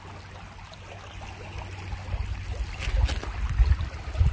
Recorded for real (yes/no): yes